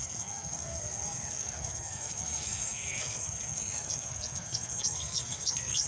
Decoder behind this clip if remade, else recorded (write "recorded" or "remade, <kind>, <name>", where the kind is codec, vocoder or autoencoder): remade, codec, SNAC